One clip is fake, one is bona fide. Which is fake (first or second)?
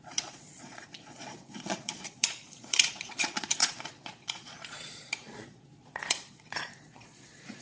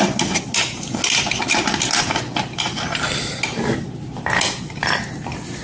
first